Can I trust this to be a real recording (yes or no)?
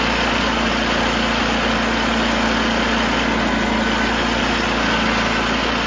yes